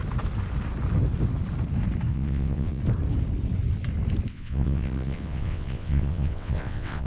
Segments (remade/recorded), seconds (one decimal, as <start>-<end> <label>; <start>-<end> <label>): 0.0-2.1 recorded; 2.1-2.8 remade; 2.8-4.3 recorded; 4.3-7.1 remade